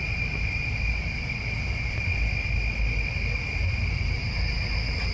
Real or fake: real